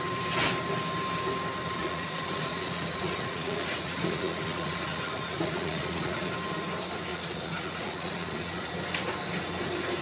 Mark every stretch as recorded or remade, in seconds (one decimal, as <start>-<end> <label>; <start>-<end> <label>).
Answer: 0.0-1.7 recorded; 1.7-6.3 remade; 6.3-7.1 recorded; 7.1-8.7 remade; 8.7-10.0 recorded